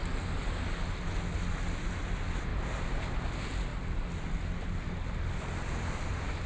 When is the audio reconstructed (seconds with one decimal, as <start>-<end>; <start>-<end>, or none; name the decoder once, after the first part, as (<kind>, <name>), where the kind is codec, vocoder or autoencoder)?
none